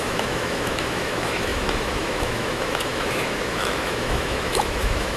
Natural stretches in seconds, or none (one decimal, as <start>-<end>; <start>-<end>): none

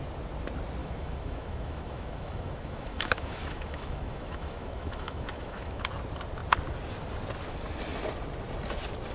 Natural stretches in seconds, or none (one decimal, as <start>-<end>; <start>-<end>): 0.0-0.8; 5.9-9.1

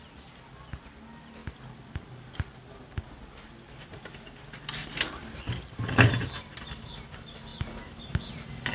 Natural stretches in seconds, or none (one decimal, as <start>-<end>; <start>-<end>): 0.0-8.7

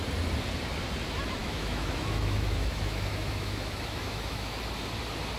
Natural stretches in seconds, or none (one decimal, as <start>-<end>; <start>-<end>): 0.0-1.4; 4.6-5.4

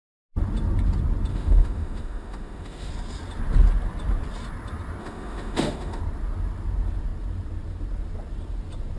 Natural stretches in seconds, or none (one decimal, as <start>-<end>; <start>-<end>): 0.0-1.3; 2.9-5.0; 6.0-9.0

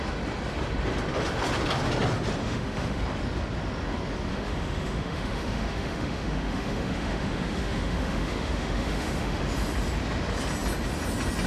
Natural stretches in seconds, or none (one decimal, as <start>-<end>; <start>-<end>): 0.0-2.4; 3.0-4.3; 9.4-11.5